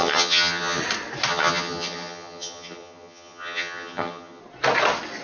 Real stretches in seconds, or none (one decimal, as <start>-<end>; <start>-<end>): 0.8-1.3; 4.4-5.2